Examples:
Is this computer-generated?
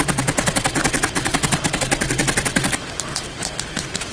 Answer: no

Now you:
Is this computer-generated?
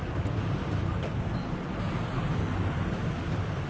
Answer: no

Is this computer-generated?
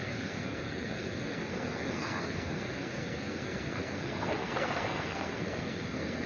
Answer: yes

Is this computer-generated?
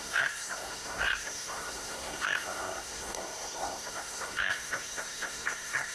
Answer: yes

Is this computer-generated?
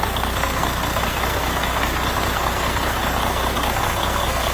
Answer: yes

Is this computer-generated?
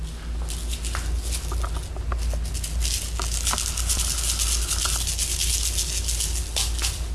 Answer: no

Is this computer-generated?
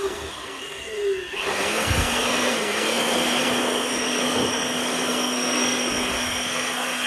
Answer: yes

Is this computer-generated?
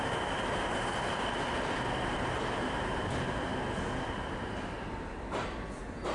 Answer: no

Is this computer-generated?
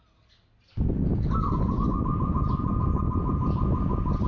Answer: no